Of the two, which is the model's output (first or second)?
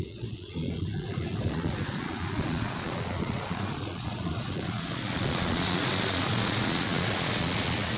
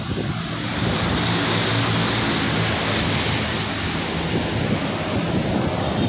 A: first